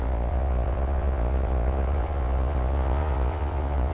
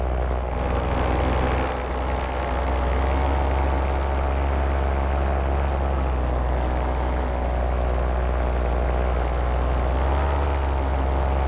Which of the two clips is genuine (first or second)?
second